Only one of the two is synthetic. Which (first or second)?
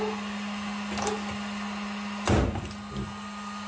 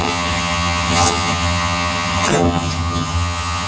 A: second